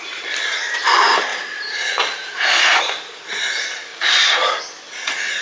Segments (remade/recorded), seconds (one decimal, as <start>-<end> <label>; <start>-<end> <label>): 0.0-1.3 recorded; 1.3-2.8 remade; 2.8-5.4 recorded